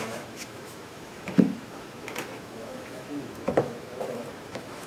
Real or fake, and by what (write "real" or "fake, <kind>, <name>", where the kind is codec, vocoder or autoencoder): fake, autoencoder, DAC-VAE